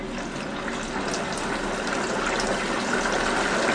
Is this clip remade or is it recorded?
recorded